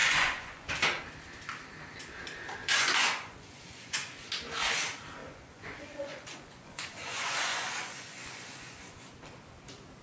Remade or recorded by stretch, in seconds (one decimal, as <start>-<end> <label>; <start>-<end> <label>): 0.0-0.7 remade; 0.7-2.6 recorded; 2.6-4.3 remade; 4.3-5.2 recorded; 5.2-9.1 remade; 9.1-10.0 recorded